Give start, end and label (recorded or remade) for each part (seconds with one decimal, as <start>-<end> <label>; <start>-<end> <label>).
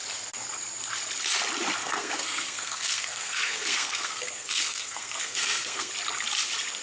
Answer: 0.0-1.8 recorded; 1.8-5.9 remade; 5.9-6.8 recorded